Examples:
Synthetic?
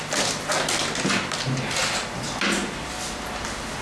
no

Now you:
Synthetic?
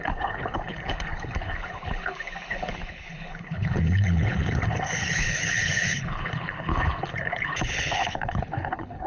yes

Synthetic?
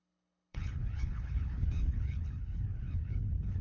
yes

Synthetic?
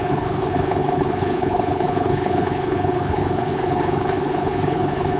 yes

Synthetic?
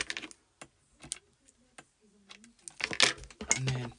no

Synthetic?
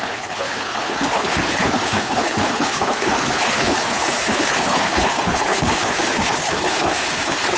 yes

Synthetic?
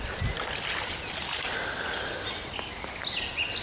no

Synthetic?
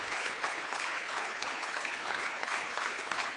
yes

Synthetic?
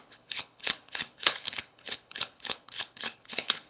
yes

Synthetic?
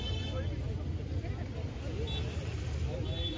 no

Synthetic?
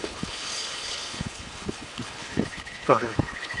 yes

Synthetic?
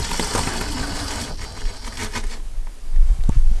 no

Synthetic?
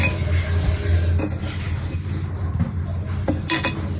no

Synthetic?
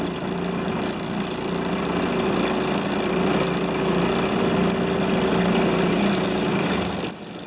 no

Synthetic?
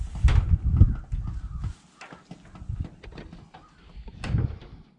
no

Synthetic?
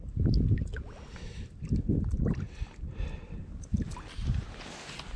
no